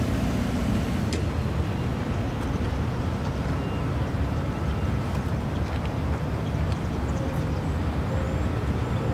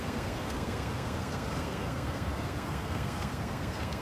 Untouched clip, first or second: first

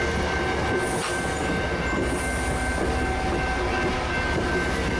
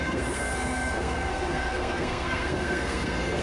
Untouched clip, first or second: first